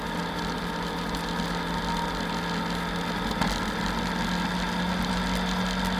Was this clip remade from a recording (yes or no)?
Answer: no